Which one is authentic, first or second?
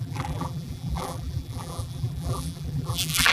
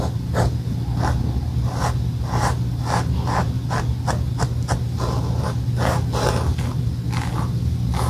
second